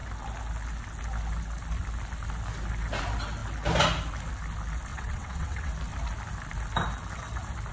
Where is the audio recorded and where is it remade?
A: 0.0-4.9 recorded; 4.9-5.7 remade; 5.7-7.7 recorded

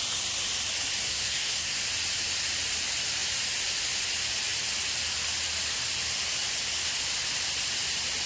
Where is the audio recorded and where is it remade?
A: 0.0-1.0 recorded; 1.0-1.8 remade; 1.8-8.3 recorded

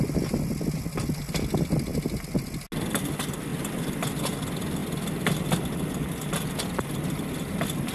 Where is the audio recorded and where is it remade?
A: 0.0-7.9 recorded

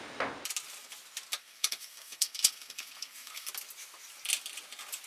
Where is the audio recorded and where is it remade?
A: 0.0-1.4 recorded; 1.4-3.5 remade; 3.5-5.1 recorded

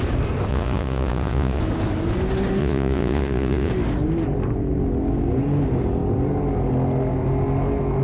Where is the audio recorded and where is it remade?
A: 0.0-0.5 recorded; 0.5-1.6 remade; 1.6-2.6 recorded; 2.6-3.7 remade; 3.7-8.0 recorded

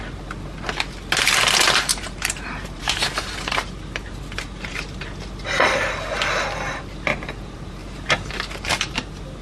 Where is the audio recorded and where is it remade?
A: 0.0-1.9 recorded; 1.9-5.3 remade; 5.3-7.8 recorded; 7.8-8.3 remade; 8.3-9.4 recorded

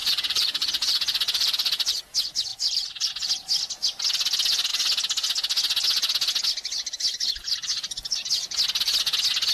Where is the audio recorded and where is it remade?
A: 0.0-2.0 remade; 2.0-2.5 recorded; 2.5-3.1 remade; 3.1-9.5 recorded

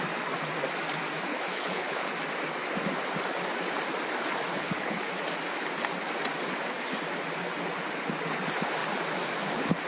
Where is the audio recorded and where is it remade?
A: 0.0-1.3 recorded; 1.3-2.1 remade; 2.1-4.5 recorded; 4.5-5.1 remade; 5.1-9.9 recorded